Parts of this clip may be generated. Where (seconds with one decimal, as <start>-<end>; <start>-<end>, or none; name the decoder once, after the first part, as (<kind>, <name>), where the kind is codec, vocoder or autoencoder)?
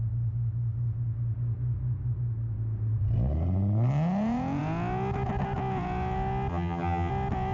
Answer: 6.5-7.1 (vocoder, HiFi-GAN)